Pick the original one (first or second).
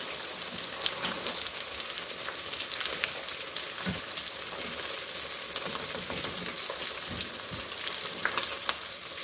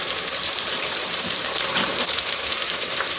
first